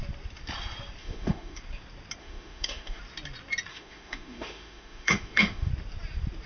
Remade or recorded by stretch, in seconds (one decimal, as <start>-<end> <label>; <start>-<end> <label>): 0.0-1.0 recorded; 1.0-1.6 remade; 1.6-2.2 recorded; 2.2-3.0 remade; 3.0-3.7 recorded; 3.7-5.7 remade; 5.7-6.5 recorded